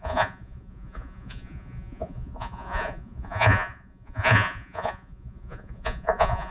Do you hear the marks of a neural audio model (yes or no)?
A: yes